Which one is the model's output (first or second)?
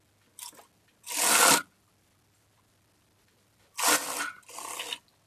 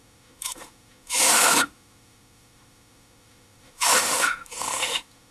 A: second